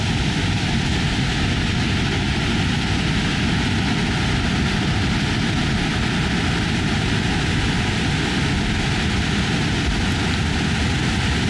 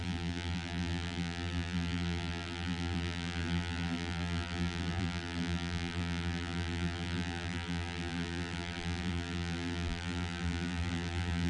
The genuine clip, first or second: first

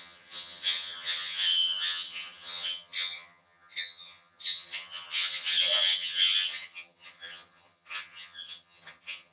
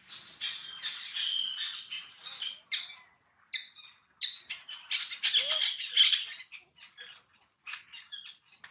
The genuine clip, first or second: second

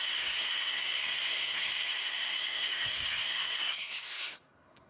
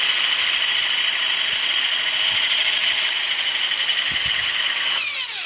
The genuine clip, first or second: second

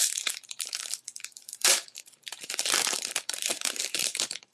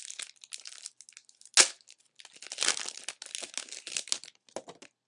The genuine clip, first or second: second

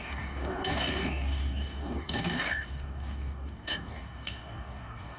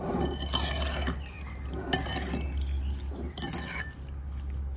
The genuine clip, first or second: second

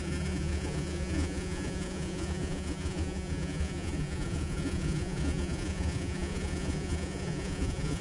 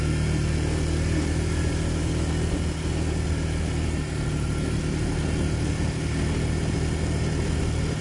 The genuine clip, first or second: second